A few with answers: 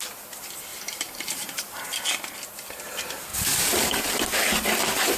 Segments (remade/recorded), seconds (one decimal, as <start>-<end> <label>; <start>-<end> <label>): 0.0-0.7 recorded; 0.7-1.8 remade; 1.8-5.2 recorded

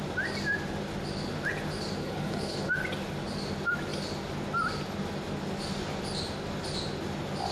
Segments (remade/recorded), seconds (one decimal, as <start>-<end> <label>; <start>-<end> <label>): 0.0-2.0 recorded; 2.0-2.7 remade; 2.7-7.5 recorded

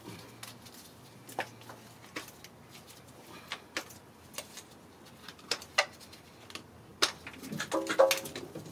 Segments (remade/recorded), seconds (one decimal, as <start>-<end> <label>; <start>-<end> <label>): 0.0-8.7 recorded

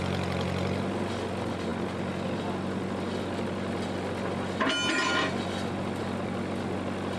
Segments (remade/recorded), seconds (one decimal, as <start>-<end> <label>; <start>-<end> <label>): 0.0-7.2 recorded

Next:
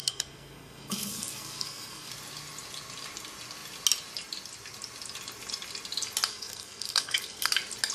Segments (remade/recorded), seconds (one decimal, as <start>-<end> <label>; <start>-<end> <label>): 0.0-2.1 remade; 2.1-6.3 recorded; 6.3-7.5 remade; 7.5-7.9 recorded

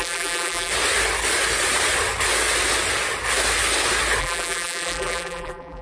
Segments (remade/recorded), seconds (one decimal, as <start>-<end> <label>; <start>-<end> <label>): 0.0-0.7 remade; 0.7-4.2 recorded; 4.2-5.8 remade